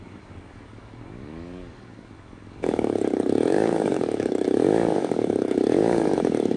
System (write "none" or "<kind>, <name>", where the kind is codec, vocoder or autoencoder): codec, DAC